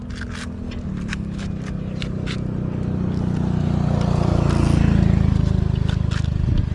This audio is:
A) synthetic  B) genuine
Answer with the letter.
B